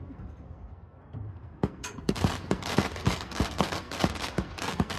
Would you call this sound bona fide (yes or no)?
no